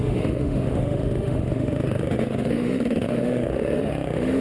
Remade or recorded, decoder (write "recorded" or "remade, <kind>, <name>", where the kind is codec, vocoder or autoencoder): remade, autoencoder, DAC-VAE